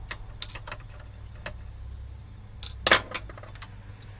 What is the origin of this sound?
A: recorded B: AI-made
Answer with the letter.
A